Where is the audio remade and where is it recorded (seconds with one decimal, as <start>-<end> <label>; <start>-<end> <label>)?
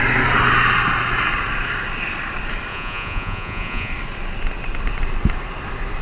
0.0-2.7 recorded; 2.7-3.9 remade; 3.9-6.0 recorded